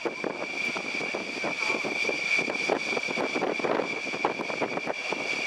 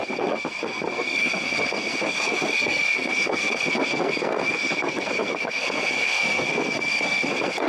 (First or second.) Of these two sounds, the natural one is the first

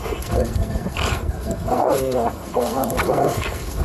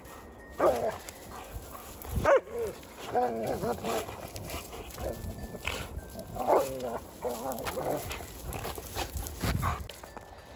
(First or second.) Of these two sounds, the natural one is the second